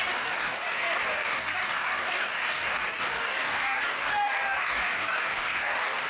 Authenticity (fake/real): fake